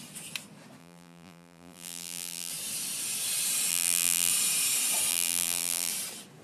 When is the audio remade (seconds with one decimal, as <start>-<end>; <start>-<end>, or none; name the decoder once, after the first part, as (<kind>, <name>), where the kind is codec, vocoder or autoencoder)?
0.8-2.5 (vocoder, BigVGAN v2); 3.7-4.3; 5.1-5.9